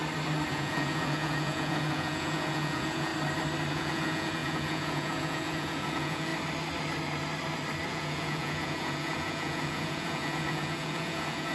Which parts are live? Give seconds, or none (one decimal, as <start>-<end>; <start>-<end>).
0.0-0.5; 3.1-3.7; 6.3-7.9